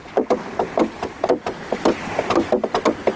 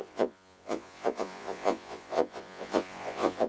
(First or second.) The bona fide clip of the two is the first